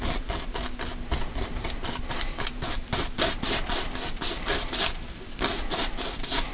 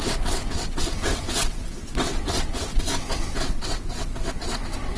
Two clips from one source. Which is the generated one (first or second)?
second